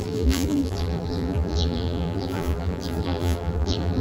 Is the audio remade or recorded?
remade